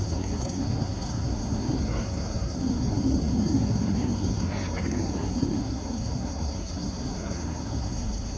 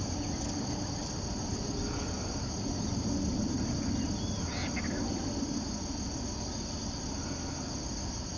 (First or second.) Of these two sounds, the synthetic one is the first